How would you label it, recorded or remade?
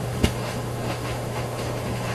remade